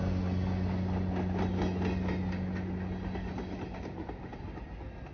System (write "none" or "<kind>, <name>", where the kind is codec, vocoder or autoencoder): none